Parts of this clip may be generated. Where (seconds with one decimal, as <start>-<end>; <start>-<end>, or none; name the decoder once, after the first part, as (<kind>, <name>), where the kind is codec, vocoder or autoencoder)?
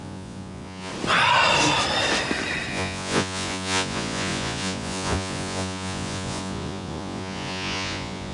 0.0-0.9 (vocoder, Vocos); 2.7-8.3